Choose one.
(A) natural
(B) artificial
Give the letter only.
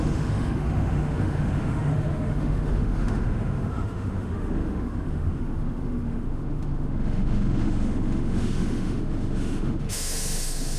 B